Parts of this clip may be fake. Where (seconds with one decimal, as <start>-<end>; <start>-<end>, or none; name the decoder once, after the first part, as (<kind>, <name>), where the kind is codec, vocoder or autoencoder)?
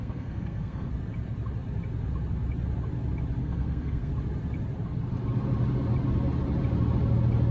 0.0-0.9 (codec, SNAC); 3.4-4.1